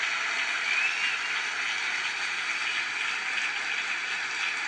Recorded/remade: recorded